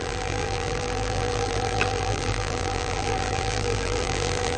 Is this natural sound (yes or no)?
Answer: no